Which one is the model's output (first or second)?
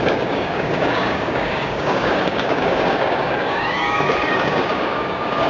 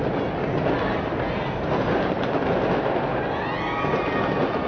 first